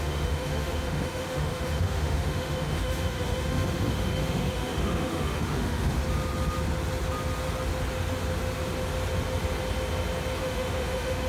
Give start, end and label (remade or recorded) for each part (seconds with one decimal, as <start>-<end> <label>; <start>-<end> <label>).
0.0-6.0 remade; 6.0-10.4 recorded; 10.4-11.3 remade